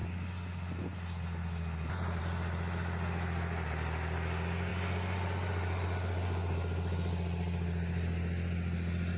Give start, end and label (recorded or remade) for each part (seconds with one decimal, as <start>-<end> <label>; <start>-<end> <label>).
0.0-9.2 recorded